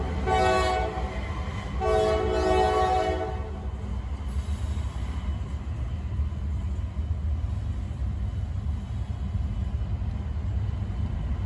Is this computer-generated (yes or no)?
no